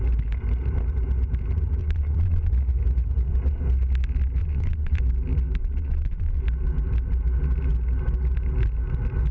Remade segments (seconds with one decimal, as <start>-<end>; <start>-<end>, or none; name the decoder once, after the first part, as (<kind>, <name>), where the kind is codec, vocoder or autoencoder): 1.8-2.5 (vocoder, Vocos); 4.4-5.0; 5.6-6.4